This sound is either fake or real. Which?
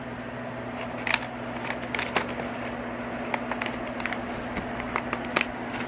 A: real